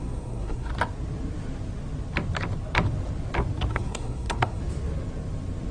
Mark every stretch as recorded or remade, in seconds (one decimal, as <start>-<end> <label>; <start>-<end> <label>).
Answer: 0.0-0.7 remade; 0.7-3.7 recorded; 3.7-4.6 remade; 4.6-5.7 recorded